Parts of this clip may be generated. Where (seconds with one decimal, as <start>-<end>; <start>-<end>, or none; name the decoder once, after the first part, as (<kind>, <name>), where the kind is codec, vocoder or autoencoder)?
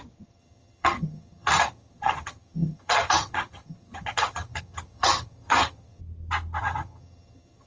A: 0.0-6.0 (vocoder, HiFi-GAN); 6.6-7.7